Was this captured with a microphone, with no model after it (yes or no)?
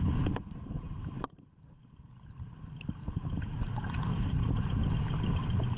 yes